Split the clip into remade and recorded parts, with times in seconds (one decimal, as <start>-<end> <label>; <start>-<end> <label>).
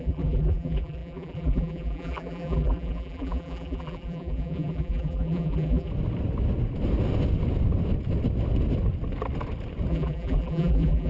0.0-5.9 remade; 5.9-9.9 recorded; 9.9-11.1 remade